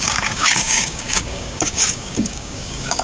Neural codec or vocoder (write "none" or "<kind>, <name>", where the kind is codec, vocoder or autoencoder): codec, DAC